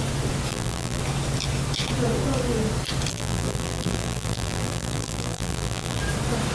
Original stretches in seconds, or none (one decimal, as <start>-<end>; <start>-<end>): 0.0-0.5; 1.0-3.1; 6.0-6.5